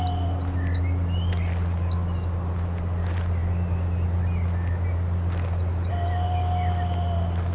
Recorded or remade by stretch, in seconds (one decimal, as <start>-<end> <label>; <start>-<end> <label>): 0.0-7.5 recorded